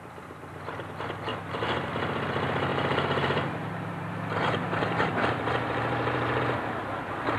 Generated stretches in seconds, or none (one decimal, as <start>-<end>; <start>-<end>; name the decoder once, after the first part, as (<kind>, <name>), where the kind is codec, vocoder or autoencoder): 1.3-1.9 (vocoder, BigVGAN v2); 2.7-6.4